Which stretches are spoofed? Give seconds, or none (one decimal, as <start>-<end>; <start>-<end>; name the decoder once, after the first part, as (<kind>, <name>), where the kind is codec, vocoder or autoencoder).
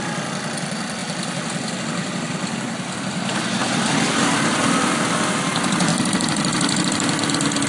none